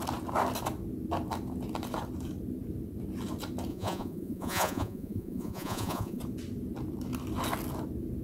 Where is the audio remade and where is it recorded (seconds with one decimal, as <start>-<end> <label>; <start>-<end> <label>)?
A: 0.0-3.7 recorded; 3.7-6.2 remade; 6.2-8.2 recorded